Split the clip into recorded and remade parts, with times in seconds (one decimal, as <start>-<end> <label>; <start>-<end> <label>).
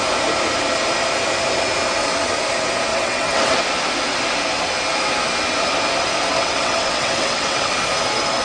0.0-2.9 recorded; 2.9-3.6 remade; 3.6-6.3 recorded; 6.3-7.7 remade; 7.7-8.4 recorded